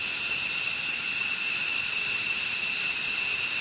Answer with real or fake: real